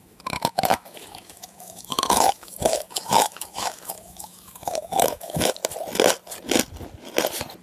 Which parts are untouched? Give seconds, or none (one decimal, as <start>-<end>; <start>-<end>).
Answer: 5.6-7.6